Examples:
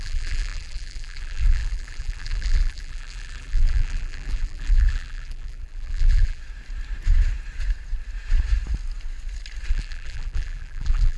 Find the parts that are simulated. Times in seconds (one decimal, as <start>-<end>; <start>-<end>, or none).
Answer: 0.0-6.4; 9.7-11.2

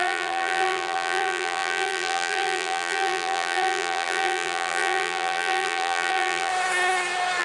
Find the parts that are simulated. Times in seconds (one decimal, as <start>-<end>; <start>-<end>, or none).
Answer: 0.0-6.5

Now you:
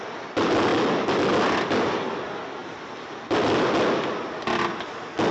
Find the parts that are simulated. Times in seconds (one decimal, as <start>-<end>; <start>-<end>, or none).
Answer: none

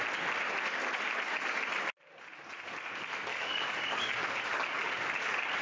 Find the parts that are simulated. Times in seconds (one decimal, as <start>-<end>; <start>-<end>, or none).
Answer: 3.3-5.6

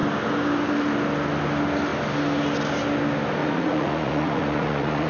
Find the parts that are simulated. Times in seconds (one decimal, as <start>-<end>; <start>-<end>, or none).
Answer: 3.4-5.1

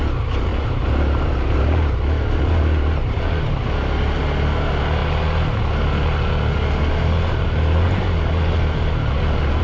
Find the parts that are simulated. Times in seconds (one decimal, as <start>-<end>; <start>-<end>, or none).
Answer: none